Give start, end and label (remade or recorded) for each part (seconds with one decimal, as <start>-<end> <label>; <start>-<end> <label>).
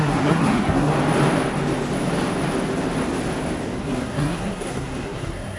0.0-0.9 remade; 0.9-3.8 recorded; 3.8-5.6 remade